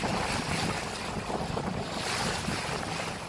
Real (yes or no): yes